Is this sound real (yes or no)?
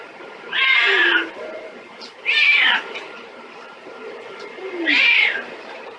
no